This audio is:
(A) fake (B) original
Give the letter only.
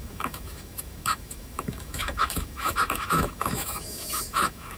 A